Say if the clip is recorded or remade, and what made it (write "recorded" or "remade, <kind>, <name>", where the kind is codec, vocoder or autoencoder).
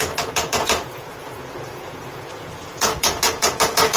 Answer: remade, vocoder, Vocos